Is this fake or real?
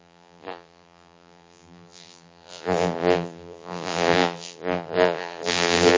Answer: fake